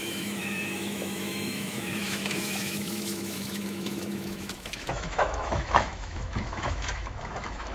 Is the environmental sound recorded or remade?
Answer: remade